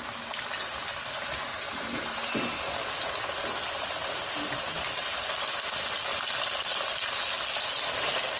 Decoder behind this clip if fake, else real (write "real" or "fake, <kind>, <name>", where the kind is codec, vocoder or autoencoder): real